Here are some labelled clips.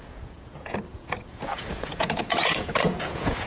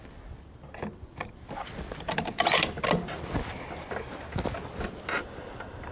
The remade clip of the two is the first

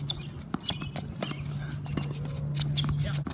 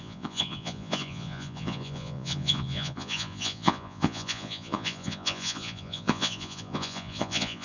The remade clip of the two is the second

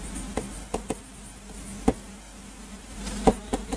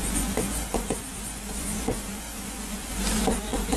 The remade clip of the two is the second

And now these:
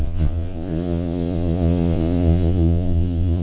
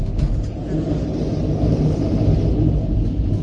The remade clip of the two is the first